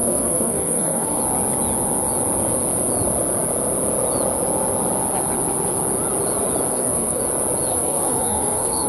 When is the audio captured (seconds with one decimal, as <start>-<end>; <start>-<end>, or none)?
1.2-6.7; 7.2-7.7